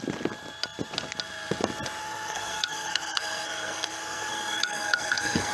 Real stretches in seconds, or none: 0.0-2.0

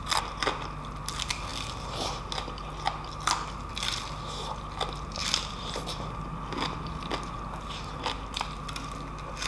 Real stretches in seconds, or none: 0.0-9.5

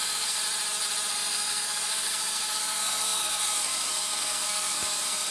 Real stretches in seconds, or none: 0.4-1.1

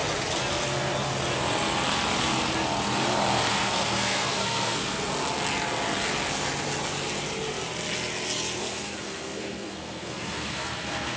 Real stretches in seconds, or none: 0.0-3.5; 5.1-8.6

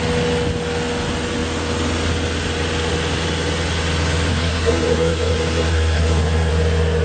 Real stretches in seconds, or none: 0.0-4.3; 6.5-7.0

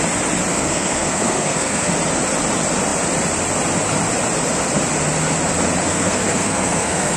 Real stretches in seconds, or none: 0.0-0.5; 1.9-5.9

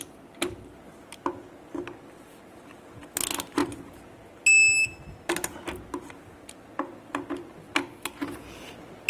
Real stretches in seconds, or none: 0.0-9.1

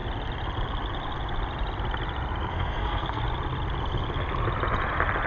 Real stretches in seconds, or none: 0.0-2.5; 3.2-5.3